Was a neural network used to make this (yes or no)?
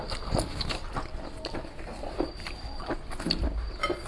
no